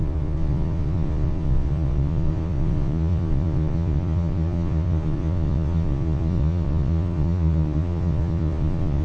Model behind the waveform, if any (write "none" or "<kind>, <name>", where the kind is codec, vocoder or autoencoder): vocoder, Vocos